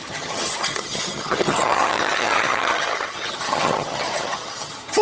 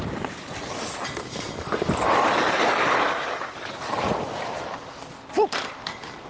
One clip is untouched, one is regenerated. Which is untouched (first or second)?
second